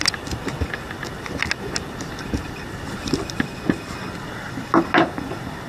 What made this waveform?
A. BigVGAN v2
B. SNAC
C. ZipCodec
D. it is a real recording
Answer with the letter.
D